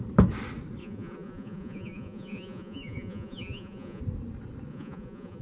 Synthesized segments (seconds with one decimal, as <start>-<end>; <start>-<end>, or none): 0.8-4.0; 4.7-5.4